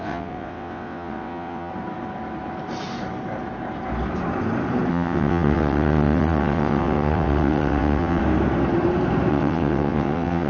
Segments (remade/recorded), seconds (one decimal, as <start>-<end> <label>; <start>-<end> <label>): 0.0-1.7 remade; 1.7-4.9 recorded; 4.9-8.2 remade; 8.2-9.3 recorded; 9.3-10.5 remade